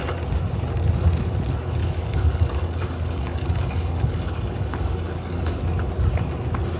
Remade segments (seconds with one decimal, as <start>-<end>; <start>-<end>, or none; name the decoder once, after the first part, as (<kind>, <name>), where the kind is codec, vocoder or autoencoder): 1.8-5.6 (codec, DAC)